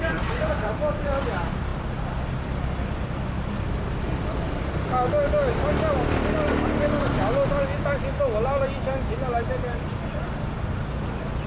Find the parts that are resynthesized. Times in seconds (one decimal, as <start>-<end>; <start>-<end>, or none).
none